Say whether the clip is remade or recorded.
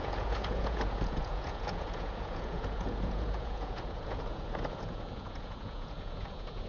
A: remade